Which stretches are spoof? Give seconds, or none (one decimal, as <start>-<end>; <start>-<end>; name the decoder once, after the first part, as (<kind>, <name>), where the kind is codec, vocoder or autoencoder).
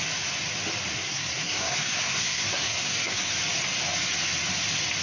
0.9-3.3 (codec, SNAC)